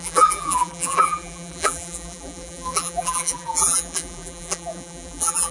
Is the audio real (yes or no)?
no